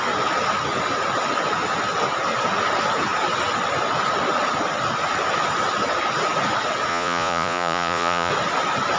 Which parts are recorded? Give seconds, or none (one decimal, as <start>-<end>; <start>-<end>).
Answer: 0.0-6.9; 8.3-9.0